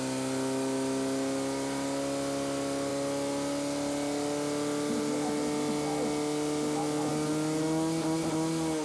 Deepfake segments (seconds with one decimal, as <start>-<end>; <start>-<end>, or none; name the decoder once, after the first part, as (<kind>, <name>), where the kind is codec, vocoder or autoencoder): none